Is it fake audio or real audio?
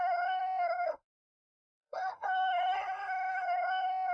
fake